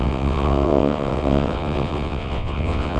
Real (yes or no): no